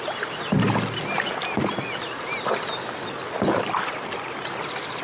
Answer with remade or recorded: recorded